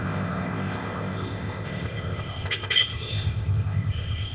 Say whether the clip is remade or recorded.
remade